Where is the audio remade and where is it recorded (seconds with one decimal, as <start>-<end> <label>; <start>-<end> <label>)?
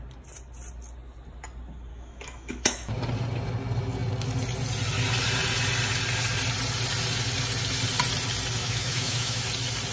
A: 0.0-1.9 recorded; 1.9-2.9 remade; 2.9-8.6 recorded; 8.6-9.4 remade; 9.4-9.9 recorded